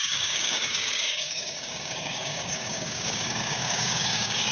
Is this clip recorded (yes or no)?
no